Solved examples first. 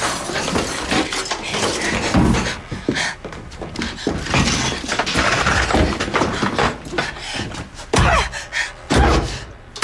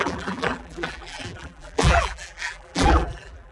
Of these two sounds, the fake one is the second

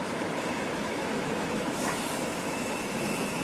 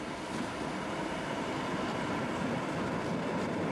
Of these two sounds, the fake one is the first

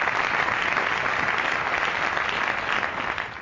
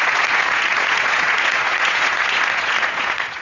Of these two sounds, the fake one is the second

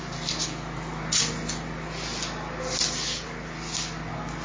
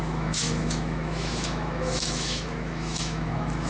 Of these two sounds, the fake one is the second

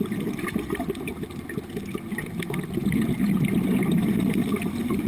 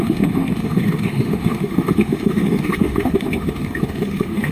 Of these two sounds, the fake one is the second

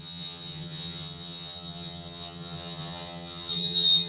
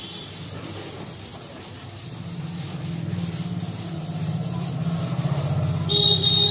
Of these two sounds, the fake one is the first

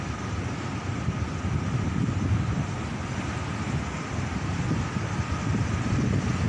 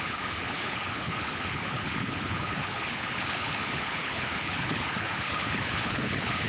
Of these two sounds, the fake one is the second